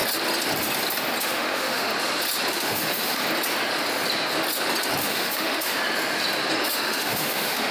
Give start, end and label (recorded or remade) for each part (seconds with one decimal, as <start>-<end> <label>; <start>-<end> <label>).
0.0-1.2 recorded; 1.2-1.9 remade; 1.9-2.5 recorded; 2.5-3.2 remade; 3.2-5.0 recorded; 5.0-5.8 remade; 5.8-6.7 recorded; 6.7-7.7 remade